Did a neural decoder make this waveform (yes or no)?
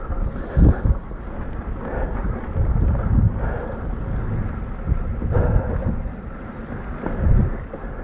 no